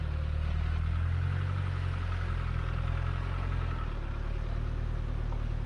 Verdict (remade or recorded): recorded